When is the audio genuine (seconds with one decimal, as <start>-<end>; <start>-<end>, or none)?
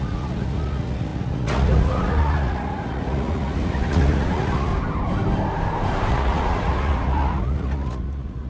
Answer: 4.7-6.1